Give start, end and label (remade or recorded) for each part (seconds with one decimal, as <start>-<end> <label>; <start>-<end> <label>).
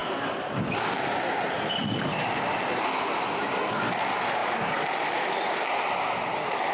0.0-6.7 recorded